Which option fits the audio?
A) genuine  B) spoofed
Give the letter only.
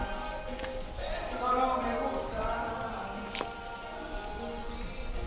A